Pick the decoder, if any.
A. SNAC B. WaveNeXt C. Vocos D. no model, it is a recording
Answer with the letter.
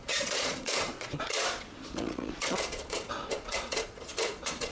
C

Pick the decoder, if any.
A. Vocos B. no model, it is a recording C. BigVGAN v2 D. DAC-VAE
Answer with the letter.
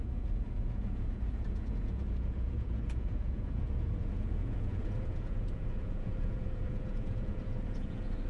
A